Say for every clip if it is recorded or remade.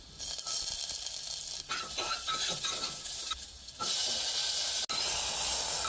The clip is recorded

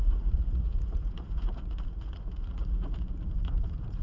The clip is remade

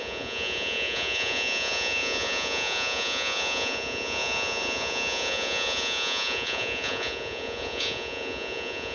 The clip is remade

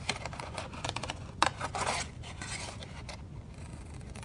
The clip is remade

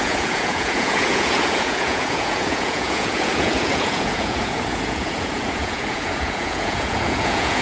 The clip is remade